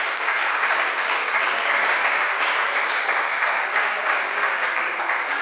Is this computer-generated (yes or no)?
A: yes